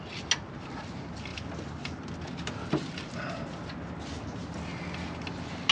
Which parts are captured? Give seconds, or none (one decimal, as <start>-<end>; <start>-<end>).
0.0-5.7

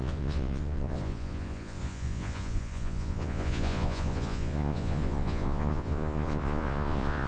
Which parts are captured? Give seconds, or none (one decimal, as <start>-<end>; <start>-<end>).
none

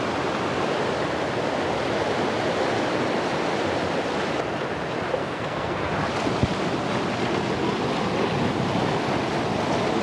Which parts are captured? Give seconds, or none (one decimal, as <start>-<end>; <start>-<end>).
0.0-5.2; 5.9-10.0

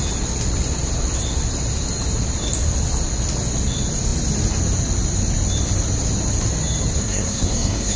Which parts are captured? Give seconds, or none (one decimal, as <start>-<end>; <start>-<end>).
0.0-7.0

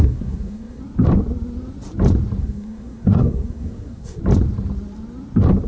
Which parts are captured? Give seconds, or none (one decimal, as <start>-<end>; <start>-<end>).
0.8-2.4; 4.2-5.7

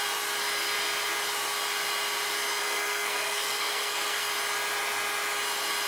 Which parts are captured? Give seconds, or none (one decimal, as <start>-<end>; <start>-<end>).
0.0-2.6; 4.3-5.9

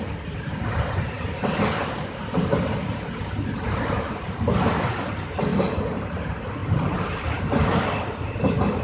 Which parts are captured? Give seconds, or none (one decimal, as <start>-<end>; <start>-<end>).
0.0-5.5; 6.1-6.6; 7.4-8.8